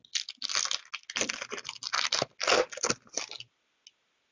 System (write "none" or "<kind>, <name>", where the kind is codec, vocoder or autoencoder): none